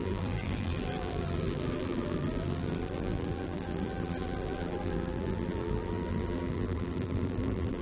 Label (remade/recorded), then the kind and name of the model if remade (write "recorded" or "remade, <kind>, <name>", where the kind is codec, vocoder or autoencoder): remade, vocoder, BigVGAN v2